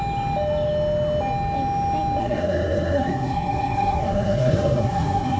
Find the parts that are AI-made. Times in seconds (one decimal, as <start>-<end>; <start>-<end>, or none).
2.2-5.4

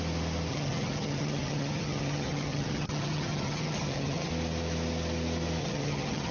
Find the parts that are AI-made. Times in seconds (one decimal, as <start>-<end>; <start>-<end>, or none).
0.5-4.3; 5.6-6.3

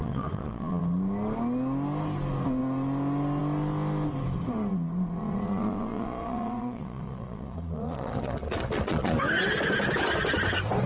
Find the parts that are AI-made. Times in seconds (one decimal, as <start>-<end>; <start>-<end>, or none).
0.0-0.8; 4.7-9.2

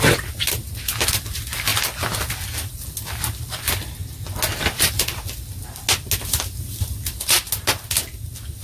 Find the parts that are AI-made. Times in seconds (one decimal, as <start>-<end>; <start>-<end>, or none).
none

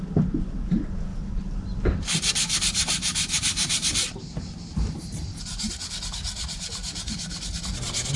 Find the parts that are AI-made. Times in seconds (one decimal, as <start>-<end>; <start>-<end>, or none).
1.1-5.7; 6.8-7.6

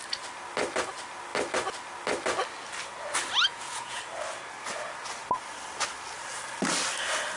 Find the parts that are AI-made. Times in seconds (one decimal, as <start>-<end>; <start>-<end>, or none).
3.5-4.0

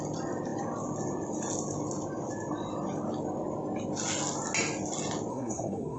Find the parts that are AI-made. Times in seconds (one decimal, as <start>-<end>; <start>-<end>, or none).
5.3-6.0